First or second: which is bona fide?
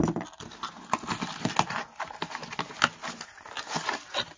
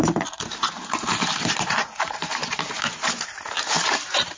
first